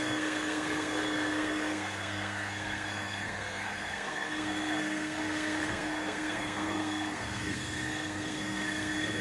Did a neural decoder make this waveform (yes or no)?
yes